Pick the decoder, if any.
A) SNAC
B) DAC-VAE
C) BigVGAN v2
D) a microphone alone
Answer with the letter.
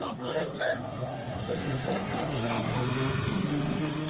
A